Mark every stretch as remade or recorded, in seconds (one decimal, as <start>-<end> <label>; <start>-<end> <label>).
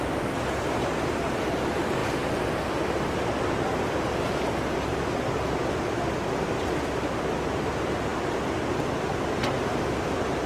0.0-10.5 recorded